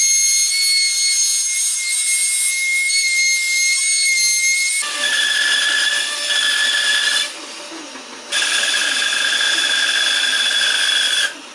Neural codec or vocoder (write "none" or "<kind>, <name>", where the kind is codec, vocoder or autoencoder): none